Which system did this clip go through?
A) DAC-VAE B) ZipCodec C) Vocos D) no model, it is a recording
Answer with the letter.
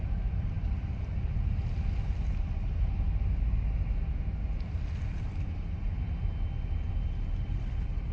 D